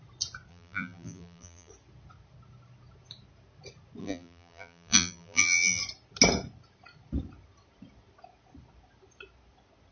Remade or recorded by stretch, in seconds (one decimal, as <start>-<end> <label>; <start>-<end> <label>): 0.0-0.5 recorded; 0.5-1.7 remade; 1.7-4.0 recorded; 4.0-5.8 remade; 5.8-9.9 recorded